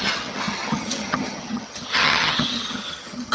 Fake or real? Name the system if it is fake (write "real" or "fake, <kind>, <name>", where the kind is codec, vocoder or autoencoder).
fake, vocoder, HiFi-GAN